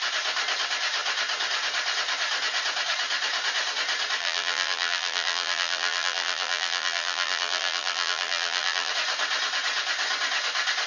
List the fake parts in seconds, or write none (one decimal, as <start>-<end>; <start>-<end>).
4.2-8.9